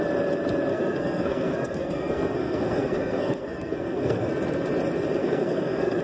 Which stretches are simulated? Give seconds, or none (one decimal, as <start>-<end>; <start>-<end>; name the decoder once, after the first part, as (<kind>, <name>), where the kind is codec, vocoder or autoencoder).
0.7-4.3 (codec, SNAC); 5.2-6.0